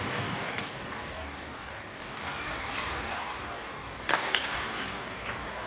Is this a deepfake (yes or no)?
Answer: yes